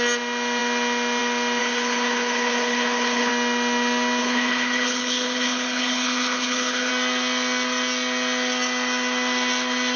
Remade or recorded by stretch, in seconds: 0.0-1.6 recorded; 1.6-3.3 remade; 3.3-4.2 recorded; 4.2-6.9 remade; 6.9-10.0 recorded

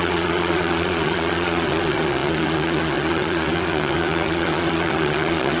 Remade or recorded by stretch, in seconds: 0.0-5.6 remade

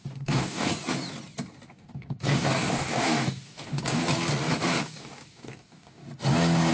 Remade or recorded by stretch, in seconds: 0.0-0.7 remade; 0.7-1.7 recorded; 1.7-4.0 remade; 4.0-4.8 recorded; 4.8-6.0 remade; 6.0-6.7 recorded

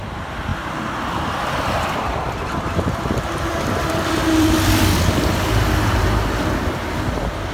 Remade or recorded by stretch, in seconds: 0.0-0.5 recorded; 0.5-5.0 remade; 5.0-7.5 recorded

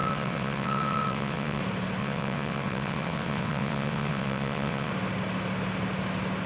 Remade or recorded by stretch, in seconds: 0.0-1.6 remade; 1.6-2.0 recorded; 2.0-4.9 remade; 4.9-6.5 recorded